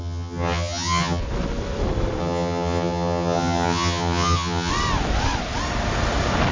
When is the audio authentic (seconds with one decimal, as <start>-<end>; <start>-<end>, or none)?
1.2-2.2; 4.7-6.5